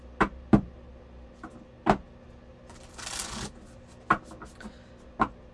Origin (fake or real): real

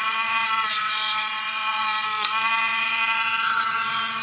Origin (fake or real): fake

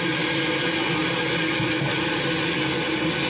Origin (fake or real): real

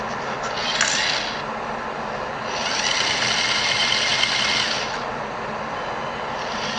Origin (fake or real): real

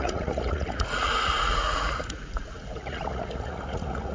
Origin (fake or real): fake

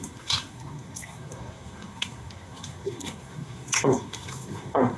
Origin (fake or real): fake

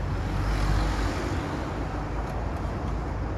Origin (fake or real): real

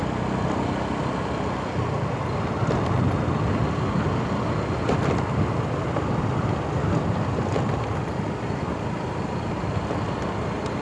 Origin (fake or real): real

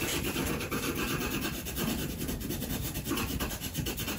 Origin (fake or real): fake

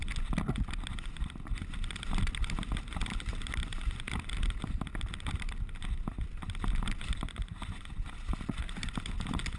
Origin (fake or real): real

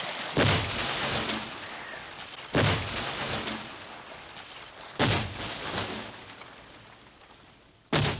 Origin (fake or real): real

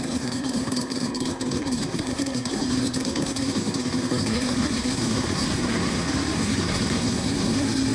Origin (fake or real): fake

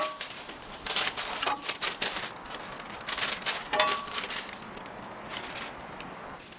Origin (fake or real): real